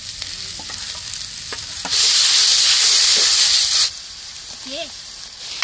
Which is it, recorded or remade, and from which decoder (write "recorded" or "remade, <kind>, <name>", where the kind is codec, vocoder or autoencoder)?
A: recorded